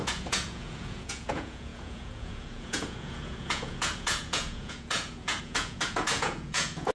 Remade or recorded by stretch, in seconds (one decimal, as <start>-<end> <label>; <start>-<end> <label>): 0.0-6.9 remade